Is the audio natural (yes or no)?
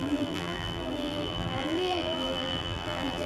no